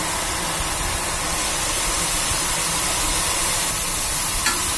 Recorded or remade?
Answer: recorded